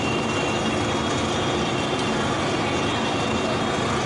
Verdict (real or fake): real